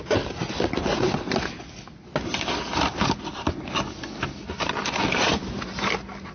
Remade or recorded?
recorded